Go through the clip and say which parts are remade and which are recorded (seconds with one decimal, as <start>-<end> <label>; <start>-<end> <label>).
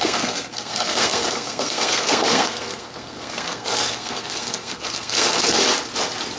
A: 0.0-5.6 remade; 5.6-6.4 recorded